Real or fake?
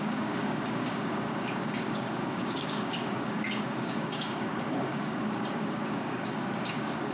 fake